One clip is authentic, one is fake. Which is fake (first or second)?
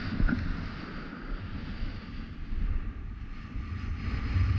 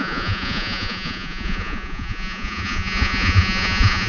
second